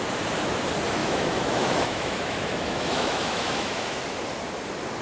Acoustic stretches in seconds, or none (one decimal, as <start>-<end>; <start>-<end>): 0.0-1.0; 4.0-5.0